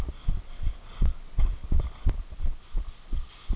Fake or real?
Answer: real